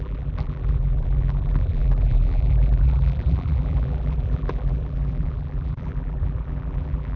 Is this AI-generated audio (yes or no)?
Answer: yes